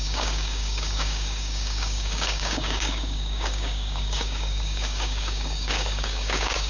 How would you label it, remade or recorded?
remade